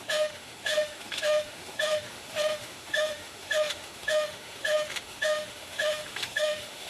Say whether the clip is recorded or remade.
remade